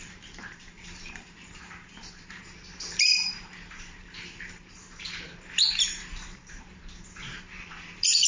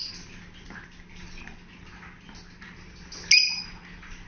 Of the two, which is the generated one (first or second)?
first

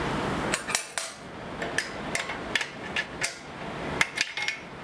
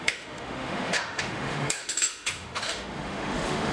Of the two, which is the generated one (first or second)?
second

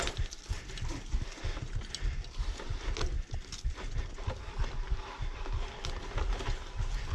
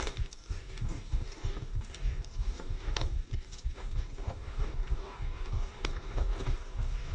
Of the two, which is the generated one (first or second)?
second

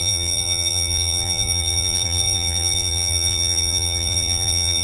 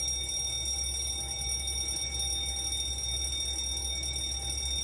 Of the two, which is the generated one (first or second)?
first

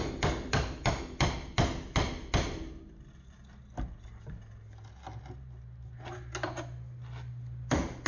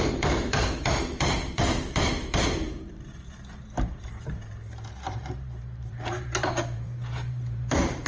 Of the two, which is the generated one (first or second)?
second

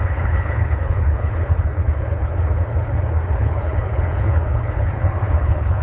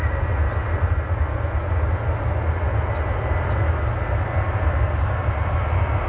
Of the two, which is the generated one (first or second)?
first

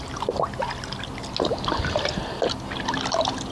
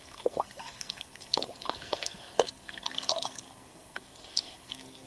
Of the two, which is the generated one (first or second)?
second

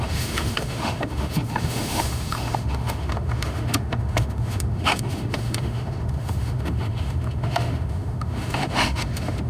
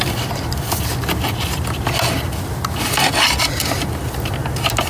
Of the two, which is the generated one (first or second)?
first